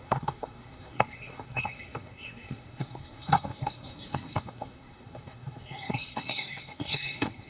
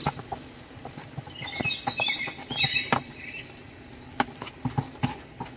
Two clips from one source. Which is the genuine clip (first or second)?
second